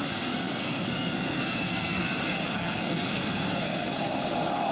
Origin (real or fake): fake